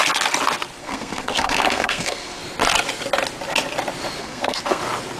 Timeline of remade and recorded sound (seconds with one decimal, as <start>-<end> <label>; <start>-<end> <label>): 0.0-0.8 recorded; 0.8-2.4 remade; 2.4-4.2 recorded; 4.2-4.8 remade; 4.8-5.2 recorded